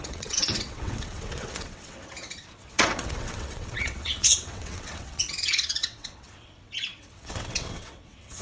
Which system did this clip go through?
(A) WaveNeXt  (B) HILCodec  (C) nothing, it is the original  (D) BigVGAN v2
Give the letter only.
A